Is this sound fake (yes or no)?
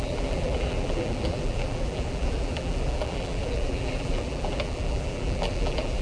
yes